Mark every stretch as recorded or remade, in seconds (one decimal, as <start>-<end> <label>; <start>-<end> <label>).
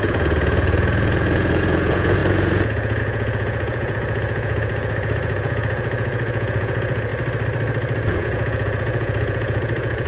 0.0-7.1 remade; 7.1-8.1 recorded; 8.1-10.1 remade